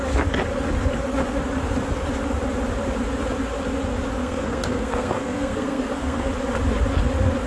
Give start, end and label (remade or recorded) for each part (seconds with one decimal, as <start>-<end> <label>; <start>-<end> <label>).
0.0-4.2 recorded; 4.2-6.3 remade; 6.3-7.5 recorded